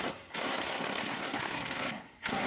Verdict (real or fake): fake